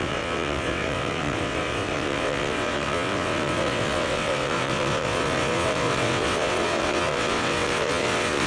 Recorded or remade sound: remade